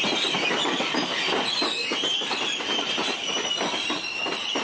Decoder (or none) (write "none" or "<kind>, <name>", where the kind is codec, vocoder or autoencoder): vocoder, BigVGAN v2